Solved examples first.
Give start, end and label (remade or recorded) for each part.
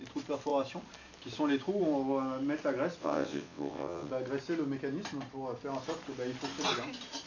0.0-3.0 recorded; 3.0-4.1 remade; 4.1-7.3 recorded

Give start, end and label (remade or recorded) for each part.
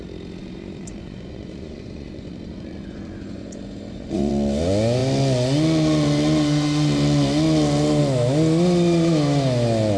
0.0-0.4 recorded; 0.4-4.3 remade; 4.3-10.0 recorded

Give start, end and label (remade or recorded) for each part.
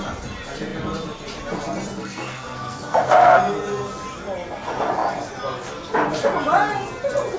0.0-2.0 recorded; 2.0-3.4 remade; 3.4-7.4 recorded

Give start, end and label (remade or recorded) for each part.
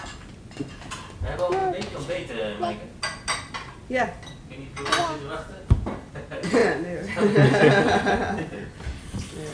0.0-1.6 recorded; 1.6-2.3 remade; 2.3-9.5 recorded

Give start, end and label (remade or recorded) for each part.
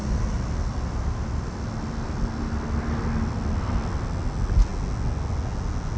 0.0-6.0 recorded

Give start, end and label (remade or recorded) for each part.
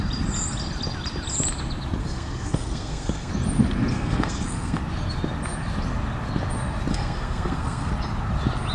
0.0-2.0 recorded; 2.0-3.3 remade; 3.3-3.9 recorded; 3.9-4.8 remade; 4.8-6.9 recorded; 6.9-7.9 remade; 7.9-8.7 recorded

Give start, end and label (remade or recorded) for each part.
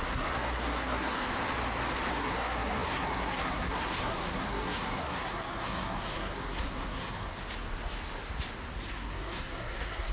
0.0-1.3 remade; 1.3-2.1 recorded; 2.1-7.3 remade; 7.3-8.9 recorded; 8.9-10.1 remade